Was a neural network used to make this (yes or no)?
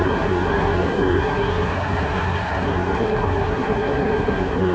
yes